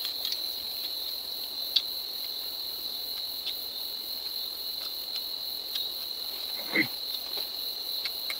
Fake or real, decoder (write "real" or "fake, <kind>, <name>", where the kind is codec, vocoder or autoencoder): real